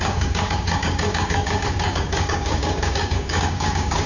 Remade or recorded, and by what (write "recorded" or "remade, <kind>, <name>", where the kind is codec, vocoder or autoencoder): remade, codec, DAC